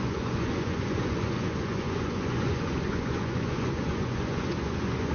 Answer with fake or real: fake